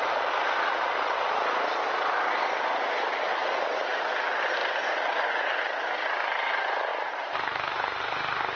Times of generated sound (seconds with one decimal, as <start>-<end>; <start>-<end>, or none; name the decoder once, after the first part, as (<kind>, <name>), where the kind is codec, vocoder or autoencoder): none